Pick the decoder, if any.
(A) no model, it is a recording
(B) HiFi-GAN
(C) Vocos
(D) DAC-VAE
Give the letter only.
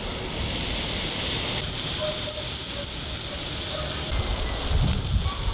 A